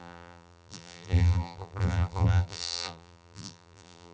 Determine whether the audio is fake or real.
fake